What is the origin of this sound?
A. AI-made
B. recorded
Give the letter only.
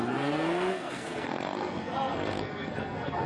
A